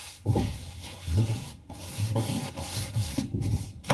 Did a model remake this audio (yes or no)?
yes